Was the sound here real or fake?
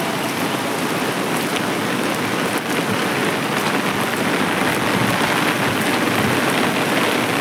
real